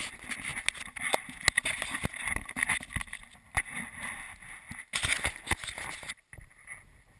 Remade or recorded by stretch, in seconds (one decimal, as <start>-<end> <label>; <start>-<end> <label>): 0.0-7.2 recorded